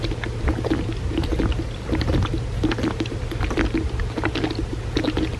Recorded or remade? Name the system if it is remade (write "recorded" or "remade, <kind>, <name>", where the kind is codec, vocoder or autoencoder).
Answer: recorded